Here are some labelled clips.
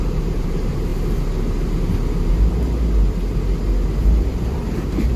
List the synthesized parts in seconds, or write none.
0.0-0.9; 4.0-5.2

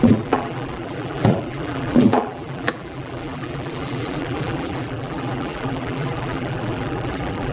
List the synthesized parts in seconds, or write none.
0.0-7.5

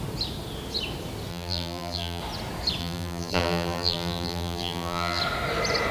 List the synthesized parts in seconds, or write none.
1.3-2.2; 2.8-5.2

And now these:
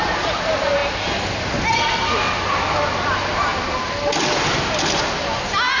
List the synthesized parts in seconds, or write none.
none

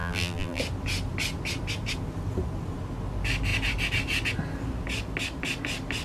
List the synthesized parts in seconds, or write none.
0.0-0.6

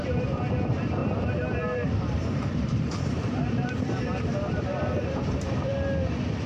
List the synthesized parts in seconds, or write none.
0.0-5.7